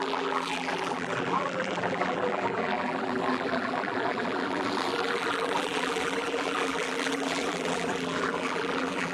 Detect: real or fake fake